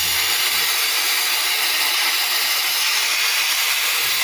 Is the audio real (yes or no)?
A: yes